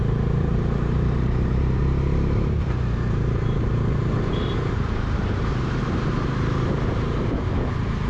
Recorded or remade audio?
remade